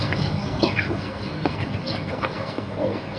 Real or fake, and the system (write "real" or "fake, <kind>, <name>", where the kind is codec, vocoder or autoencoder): fake, codec, SNAC